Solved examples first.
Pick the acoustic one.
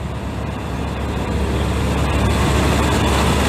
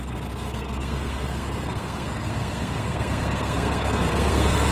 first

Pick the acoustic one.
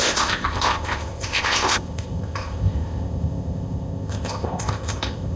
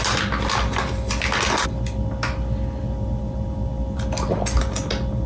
second